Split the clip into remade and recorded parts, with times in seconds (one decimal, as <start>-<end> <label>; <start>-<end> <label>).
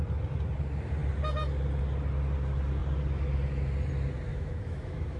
0.0-4.3 recorded; 4.3-5.2 remade